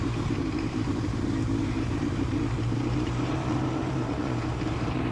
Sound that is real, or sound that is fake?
fake